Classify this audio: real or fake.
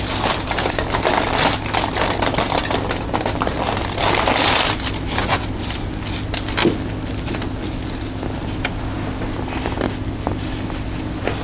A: real